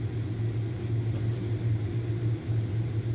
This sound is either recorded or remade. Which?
recorded